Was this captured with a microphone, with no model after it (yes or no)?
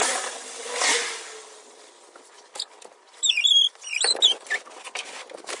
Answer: yes